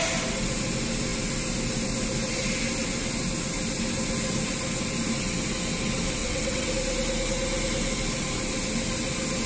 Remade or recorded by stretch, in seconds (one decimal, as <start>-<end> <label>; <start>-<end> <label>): 0.0-6.2 recorded; 6.2-6.7 remade; 6.7-9.5 recorded